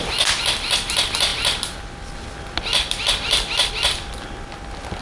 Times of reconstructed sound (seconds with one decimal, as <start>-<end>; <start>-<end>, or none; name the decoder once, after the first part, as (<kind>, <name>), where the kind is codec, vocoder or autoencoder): none